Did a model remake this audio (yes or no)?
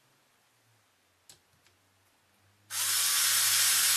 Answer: no